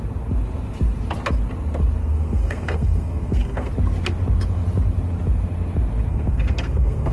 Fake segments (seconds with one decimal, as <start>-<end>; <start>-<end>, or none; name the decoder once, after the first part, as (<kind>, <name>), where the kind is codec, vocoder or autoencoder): 2.0-3.7 (codec, SNAC); 6.1-7.1